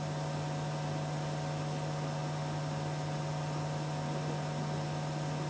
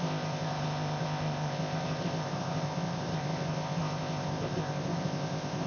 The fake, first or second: second